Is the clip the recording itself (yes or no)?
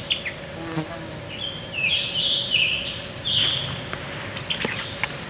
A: yes